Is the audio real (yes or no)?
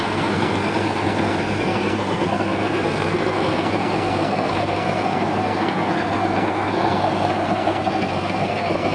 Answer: no